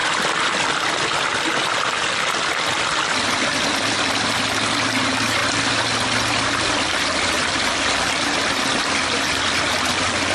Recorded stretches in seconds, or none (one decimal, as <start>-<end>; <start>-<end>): 2.8-5.4; 7.8-10.3